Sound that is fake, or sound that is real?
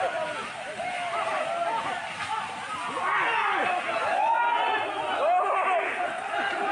real